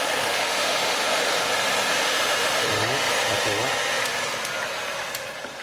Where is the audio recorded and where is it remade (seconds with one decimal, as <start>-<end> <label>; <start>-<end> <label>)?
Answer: 0.0-1.5 remade; 1.5-1.9 recorded; 1.9-2.7 remade; 2.7-5.6 recorded